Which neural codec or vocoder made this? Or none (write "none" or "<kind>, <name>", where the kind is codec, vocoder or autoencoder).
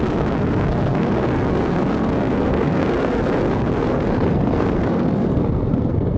codec, SNAC